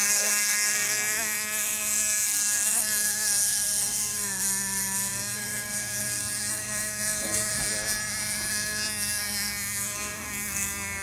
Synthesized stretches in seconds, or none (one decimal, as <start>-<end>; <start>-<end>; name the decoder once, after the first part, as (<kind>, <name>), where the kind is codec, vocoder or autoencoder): 0.0-7.5 (codec, SNAC); 8.5-11.0